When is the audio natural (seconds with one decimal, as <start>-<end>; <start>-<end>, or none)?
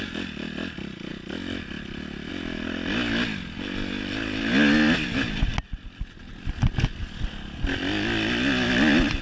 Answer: 0.0-9.2